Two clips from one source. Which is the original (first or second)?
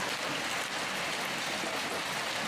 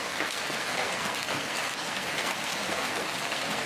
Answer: first